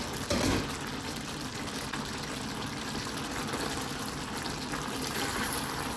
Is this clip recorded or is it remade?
recorded